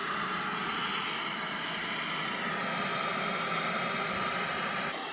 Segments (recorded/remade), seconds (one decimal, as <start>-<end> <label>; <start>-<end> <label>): 0.0-5.1 recorded